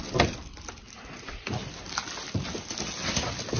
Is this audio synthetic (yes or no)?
no